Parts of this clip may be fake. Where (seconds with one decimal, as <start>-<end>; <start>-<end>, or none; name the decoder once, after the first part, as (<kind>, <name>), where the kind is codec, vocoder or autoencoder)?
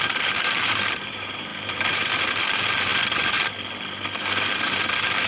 0.0-2.9 (vocoder, BigVGAN v2); 4.5-5.3